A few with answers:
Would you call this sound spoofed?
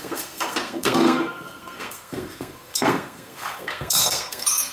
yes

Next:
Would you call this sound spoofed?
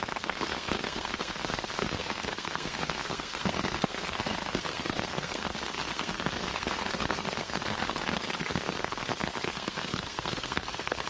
yes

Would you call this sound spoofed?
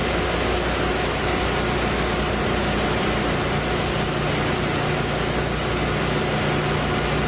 no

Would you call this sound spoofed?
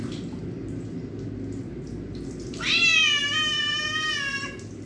no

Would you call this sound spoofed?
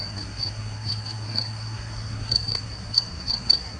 yes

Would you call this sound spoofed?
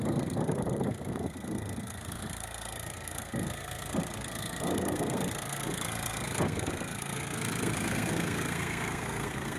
yes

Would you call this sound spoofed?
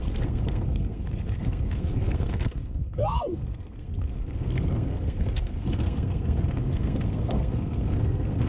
yes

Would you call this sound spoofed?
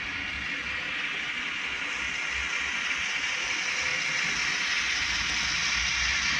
no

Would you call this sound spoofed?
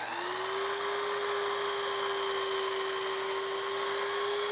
no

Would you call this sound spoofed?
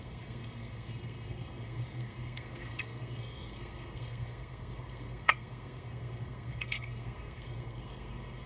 yes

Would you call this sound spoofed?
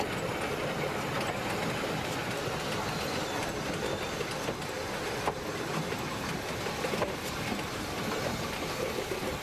no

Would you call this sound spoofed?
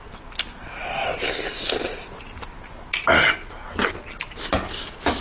no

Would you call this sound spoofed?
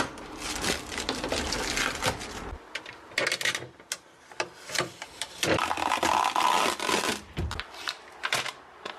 no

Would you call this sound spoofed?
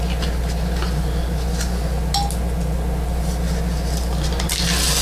no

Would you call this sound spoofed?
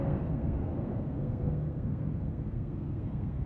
yes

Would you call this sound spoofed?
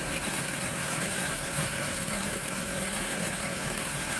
yes